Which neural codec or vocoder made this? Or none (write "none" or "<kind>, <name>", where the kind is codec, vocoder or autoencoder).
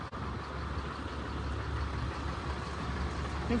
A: none